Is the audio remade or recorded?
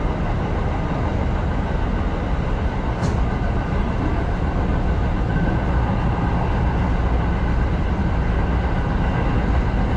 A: recorded